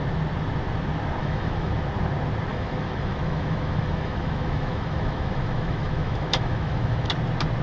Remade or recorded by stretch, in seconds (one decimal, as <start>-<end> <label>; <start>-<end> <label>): 0.0-1.2 recorded; 1.2-1.7 remade; 1.7-2.5 recorded; 2.5-7.1 remade; 7.1-7.6 recorded